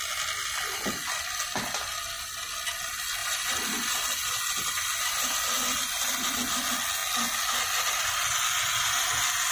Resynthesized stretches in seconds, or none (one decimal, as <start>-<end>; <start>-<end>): 3.2-6.0